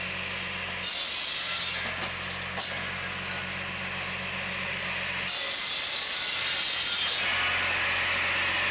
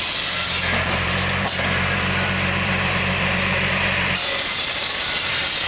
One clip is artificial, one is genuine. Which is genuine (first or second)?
first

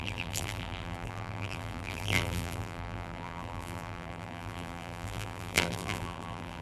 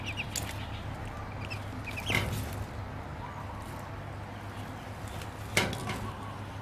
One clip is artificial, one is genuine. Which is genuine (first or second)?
second